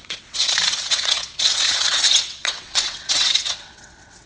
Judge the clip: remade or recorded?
remade